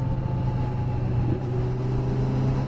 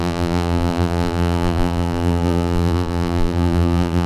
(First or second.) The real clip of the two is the first